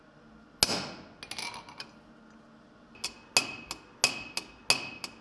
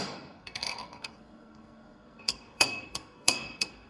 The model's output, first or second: second